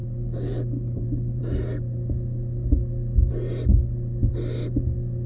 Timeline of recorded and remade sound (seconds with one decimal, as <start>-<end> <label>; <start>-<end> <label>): 0.0-1.4 remade; 1.4-5.3 recorded